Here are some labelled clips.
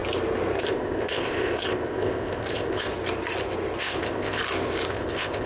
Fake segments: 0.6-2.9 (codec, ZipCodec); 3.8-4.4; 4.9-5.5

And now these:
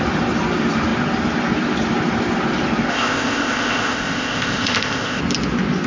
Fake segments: 2.9-5.2 (codec, ZipCodec)

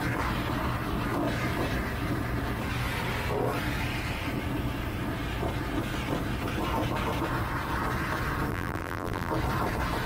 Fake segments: 8.5-9.3 (vocoder, BigVGAN v2)